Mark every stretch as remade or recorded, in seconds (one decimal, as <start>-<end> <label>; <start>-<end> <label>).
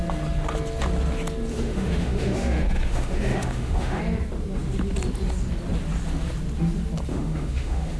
0.0-1.5 recorded; 1.5-4.0 remade; 4.0-7.1 recorded; 7.1-8.0 remade